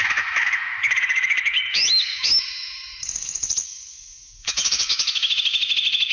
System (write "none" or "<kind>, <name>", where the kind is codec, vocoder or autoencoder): autoencoder, DAC-VAE